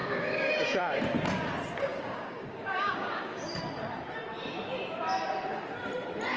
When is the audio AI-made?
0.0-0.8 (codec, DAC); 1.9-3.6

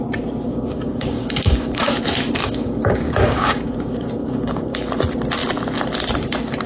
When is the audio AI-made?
0.5-1.9 (codec, DAC); 2.4-4.9

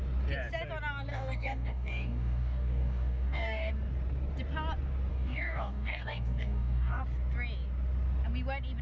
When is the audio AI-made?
1.1-3.7 (codec, DAC); 5.1-7.0

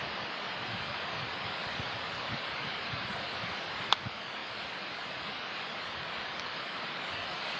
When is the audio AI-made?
0.0-7.6 (codec, DAC)

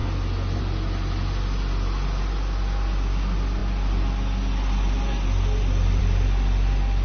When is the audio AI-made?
none